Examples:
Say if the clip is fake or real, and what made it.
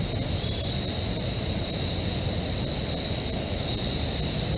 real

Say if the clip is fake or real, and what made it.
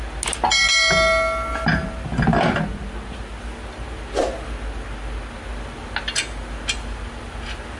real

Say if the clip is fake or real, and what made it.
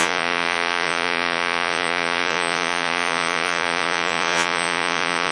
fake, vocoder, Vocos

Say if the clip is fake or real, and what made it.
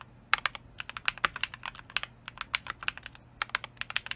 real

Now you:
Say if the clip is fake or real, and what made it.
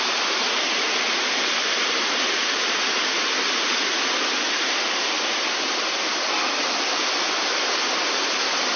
real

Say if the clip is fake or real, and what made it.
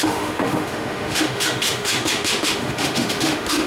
fake, autoencoder, DAC-VAE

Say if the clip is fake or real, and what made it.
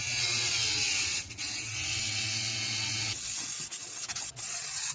fake, vocoder, WaveNeXt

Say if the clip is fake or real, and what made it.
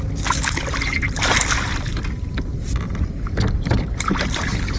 real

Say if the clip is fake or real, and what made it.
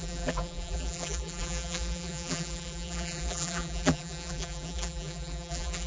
fake, vocoder, BigVGAN v2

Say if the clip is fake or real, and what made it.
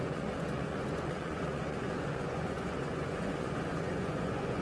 fake, vocoder, Vocos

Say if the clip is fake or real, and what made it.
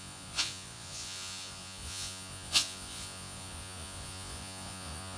fake, vocoder, Vocos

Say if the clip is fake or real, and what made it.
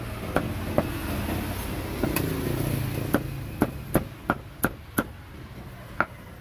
real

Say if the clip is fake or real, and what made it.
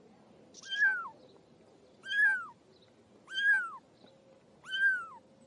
real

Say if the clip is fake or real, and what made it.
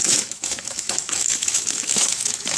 fake, autoencoder, DAC-VAE